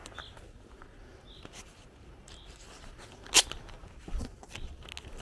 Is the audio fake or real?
real